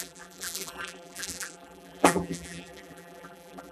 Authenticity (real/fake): fake